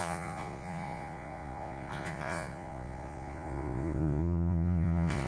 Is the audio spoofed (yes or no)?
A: yes